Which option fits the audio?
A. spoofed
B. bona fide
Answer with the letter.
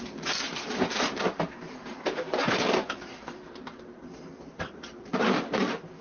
A